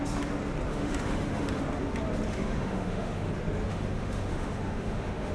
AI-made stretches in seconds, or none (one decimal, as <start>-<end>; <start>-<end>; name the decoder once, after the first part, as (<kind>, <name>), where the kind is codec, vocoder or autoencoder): 0.7-1.6 (autoencoder, DAC-VAE); 2.3-3.3; 3.7-5.3